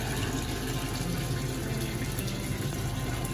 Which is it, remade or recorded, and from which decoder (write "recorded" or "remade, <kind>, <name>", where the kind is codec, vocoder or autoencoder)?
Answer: recorded